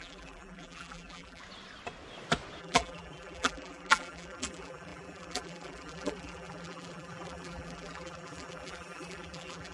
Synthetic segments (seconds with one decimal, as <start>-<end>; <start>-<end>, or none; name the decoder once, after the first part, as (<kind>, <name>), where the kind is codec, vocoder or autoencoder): 0.0-1.4 (vocoder, BigVGAN v2); 2.6-9.7